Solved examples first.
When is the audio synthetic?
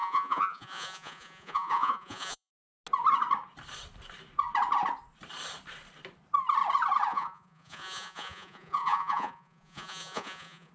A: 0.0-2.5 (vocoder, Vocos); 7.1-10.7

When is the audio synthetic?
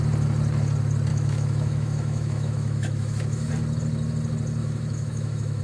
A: 1.1-3.5 (autoencoder, DAC-VAE); 4.6-5.6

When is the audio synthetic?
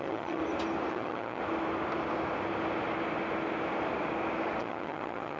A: 0.0-0.4 (vocoder, HiFi-GAN); 0.9-1.4; 4.6-5.4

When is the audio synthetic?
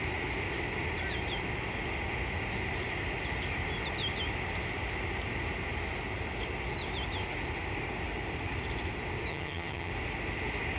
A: 9.3-9.9 (vocoder, HiFi-GAN)